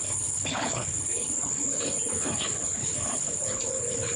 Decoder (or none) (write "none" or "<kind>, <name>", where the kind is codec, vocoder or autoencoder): codec, HILCodec